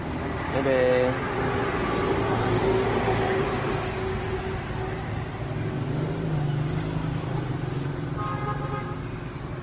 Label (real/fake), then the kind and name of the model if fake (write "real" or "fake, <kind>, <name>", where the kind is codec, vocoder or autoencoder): real